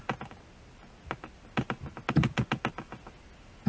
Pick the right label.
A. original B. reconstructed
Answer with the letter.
A